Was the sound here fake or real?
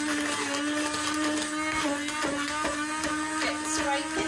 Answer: real